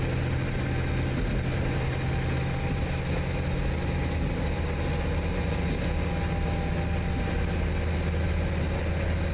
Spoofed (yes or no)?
no